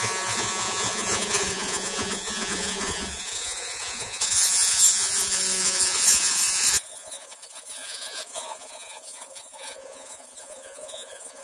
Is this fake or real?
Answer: fake